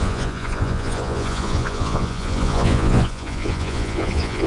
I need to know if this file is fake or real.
fake